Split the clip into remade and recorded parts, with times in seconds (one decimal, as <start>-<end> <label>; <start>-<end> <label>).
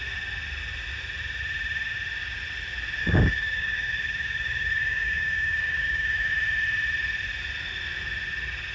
0.0-3.0 recorded; 3.0-6.3 remade; 6.3-8.7 recorded